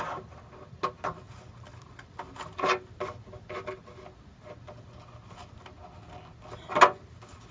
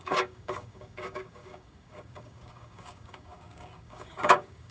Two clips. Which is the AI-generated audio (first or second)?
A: second